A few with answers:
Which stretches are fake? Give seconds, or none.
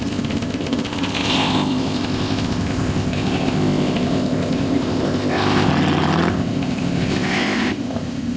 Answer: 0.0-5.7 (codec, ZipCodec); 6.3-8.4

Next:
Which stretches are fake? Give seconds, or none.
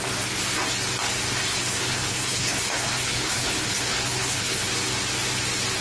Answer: 1.5-4.7 (codec, HILCodec)